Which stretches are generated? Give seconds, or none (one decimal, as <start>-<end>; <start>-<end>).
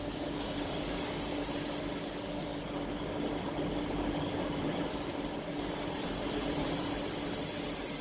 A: 0.0-1.5